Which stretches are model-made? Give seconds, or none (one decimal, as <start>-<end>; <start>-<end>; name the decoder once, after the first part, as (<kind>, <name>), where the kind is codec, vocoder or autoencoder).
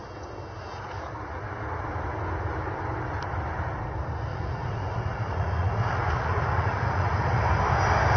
4.3-7.4 (vocoder, Vocos)